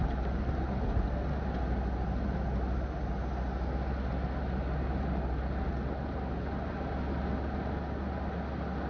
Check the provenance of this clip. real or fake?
real